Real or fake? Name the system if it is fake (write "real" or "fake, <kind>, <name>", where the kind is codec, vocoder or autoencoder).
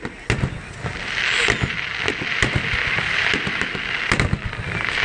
real